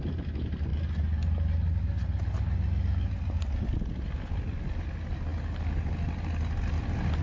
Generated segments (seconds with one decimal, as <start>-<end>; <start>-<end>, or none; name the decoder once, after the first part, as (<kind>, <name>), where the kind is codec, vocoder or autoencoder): none